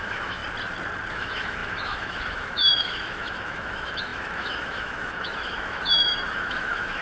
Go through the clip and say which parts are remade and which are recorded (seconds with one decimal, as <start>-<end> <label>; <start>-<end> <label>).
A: 0.0-0.4 remade; 0.4-1.1 recorded; 1.1-7.0 remade